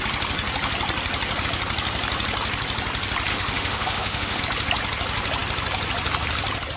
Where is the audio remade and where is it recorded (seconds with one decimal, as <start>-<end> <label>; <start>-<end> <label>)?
0.0-3.3 recorded; 3.3-4.4 remade; 4.4-6.8 recorded